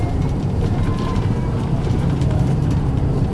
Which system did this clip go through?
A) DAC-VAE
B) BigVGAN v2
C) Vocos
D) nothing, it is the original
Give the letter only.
B